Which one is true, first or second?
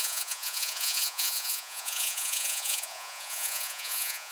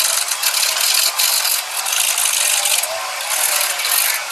second